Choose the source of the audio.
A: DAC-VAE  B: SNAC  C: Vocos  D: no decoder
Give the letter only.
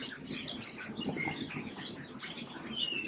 D